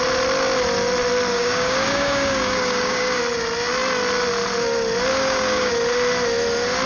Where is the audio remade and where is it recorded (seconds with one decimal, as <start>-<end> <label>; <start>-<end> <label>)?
0.0-1.3 recorded; 1.3-3.2 remade; 3.2-5.1 recorded; 5.1-5.7 remade; 5.7-6.9 recorded